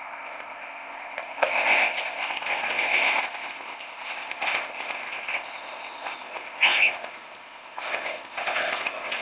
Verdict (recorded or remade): remade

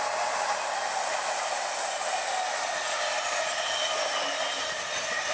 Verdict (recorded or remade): recorded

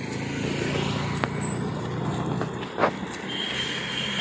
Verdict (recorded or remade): recorded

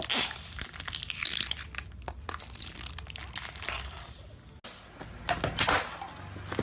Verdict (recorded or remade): recorded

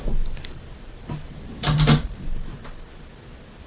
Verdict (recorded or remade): recorded